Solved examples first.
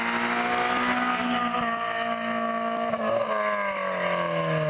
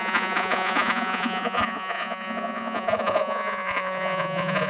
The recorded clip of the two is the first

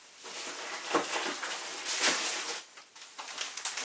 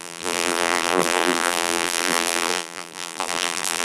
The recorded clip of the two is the first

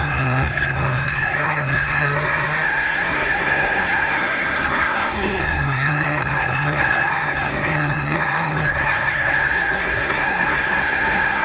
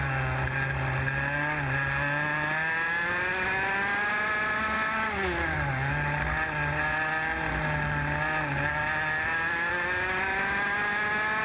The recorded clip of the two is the second